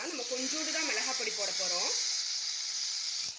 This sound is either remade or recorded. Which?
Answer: recorded